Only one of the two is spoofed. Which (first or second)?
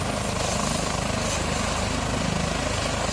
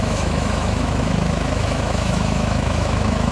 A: second